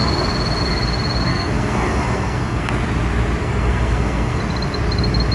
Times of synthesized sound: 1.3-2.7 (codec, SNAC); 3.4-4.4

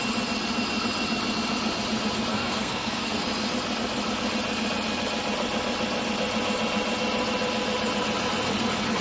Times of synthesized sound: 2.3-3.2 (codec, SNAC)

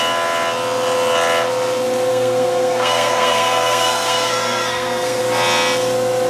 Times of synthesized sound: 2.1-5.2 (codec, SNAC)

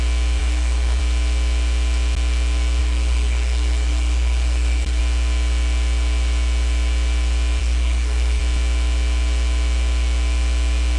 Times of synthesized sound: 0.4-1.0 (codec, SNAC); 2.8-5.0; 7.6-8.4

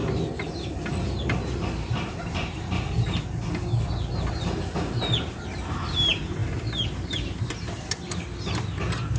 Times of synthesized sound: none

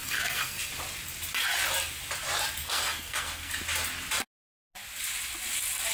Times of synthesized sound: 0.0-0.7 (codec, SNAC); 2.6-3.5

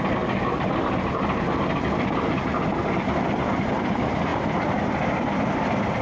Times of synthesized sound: none